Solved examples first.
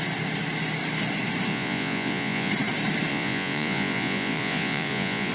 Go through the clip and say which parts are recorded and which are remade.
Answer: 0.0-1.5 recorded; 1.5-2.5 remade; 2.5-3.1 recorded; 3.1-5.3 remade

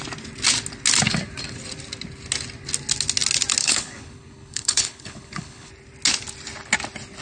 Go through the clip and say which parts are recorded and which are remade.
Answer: 0.0-3.6 recorded; 3.6-5.7 remade; 5.7-7.2 recorded

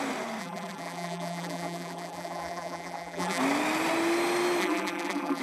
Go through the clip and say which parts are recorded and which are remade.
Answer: 0.0-0.4 recorded; 0.4-3.4 remade; 3.4-4.6 recorded; 4.6-5.4 remade

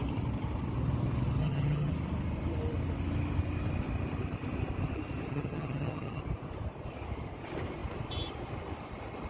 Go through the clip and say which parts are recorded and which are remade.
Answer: 0.0-1.4 recorded; 1.4-1.9 remade; 1.9-5.3 recorded; 5.3-6.2 remade; 6.2-9.3 recorded

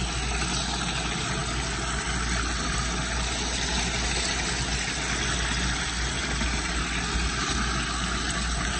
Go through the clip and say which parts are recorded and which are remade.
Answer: 0.0-8.8 recorded

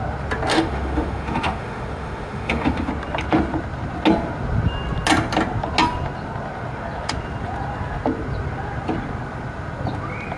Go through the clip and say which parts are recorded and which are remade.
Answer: 0.0-0.5 recorded; 0.5-2.9 remade; 2.9-10.4 recorded

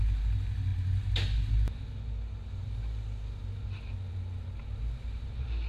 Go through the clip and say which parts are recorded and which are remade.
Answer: 0.0-5.7 recorded